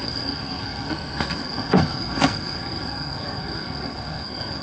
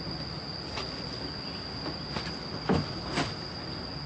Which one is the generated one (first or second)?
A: first